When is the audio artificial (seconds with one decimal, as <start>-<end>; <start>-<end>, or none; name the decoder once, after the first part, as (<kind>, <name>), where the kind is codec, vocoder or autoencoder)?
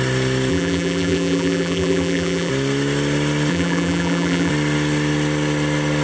0.5-2.5 (vocoder, BigVGAN v2); 3.5-4.5